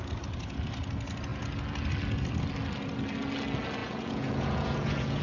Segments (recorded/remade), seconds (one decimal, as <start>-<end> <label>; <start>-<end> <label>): 0.0-3.8 recorded; 3.8-5.2 remade